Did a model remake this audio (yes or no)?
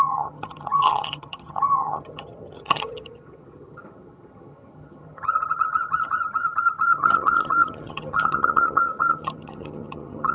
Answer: yes